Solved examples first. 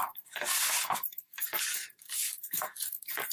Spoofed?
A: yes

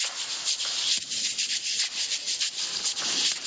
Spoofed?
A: no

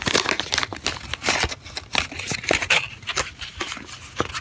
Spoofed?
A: no